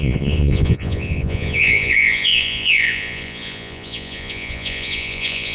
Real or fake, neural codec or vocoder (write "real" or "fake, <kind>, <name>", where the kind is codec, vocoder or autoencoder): fake, vocoder, Vocos